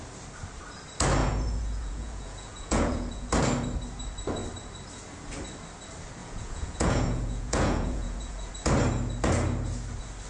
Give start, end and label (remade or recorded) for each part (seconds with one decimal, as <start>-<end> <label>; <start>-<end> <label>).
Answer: 0.0-1.2 recorded; 1.2-3.3 remade; 3.3-6.2 recorded; 6.2-8.5 remade; 8.5-10.3 recorded